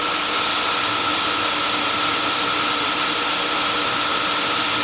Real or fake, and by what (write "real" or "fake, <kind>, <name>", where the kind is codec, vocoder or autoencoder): real